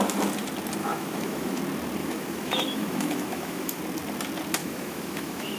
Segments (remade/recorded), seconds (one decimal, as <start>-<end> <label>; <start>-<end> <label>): 0.0-0.8 recorded; 0.8-1.6 remade; 1.6-2.0 recorded; 2.0-3.8 remade; 3.8-4.6 recorded; 4.6-5.6 remade